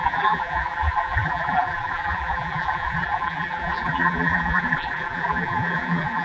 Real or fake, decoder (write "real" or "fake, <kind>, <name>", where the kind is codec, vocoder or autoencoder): fake, vocoder, BigVGAN v2